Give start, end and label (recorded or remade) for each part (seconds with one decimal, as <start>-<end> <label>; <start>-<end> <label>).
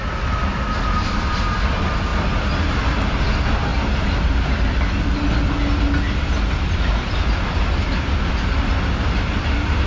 0.0-9.9 recorded